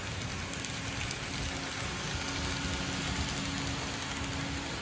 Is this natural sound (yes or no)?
yes